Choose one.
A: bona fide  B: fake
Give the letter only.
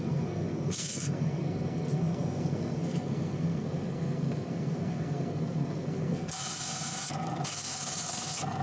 B